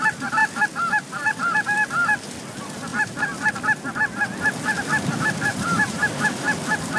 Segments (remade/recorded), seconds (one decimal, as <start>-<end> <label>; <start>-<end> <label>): 0.0-5.5 recorded; 5.5-6.1 remade; 6.1-7.0 recorded